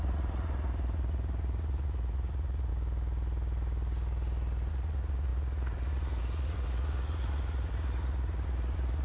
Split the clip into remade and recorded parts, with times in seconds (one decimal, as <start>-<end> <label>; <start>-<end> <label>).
0.0-2.7 remade; 2.7-4.7 recorded; 4.7-9.0 remade